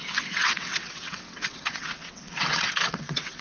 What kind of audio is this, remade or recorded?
remade